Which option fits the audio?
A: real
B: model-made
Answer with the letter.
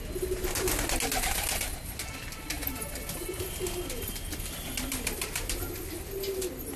A